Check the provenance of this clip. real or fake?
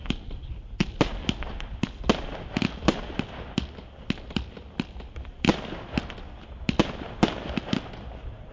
real